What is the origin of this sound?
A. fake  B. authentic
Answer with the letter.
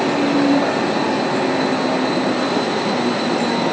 B